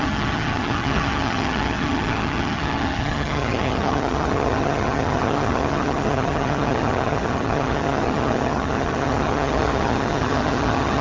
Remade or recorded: remade